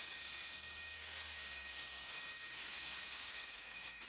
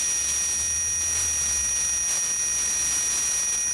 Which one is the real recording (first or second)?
second